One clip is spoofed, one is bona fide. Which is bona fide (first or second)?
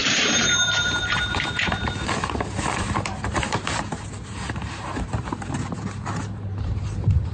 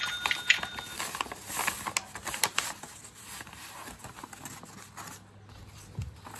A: second